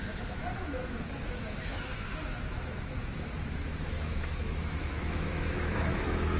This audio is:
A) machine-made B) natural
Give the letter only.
A